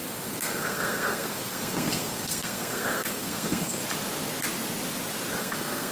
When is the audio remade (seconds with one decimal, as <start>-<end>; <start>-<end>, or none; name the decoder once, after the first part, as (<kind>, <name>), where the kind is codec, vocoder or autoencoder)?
0.0-3.8 (codec, SNAC); 5.4-5.9